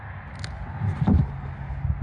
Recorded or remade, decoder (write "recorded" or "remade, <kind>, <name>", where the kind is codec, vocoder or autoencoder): recorded